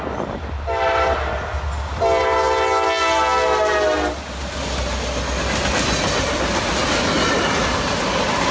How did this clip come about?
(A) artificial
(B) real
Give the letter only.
B